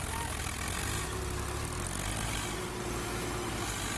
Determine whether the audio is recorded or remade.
recorded